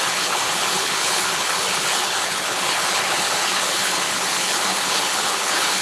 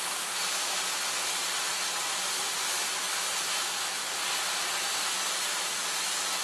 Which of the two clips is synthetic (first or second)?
first